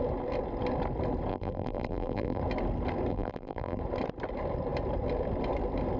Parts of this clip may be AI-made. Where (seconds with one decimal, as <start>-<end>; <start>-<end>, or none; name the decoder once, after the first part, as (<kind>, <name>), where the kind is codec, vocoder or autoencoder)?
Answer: 1.3-2.4 (vocoder, BigVGAN v2); 3.1-3.8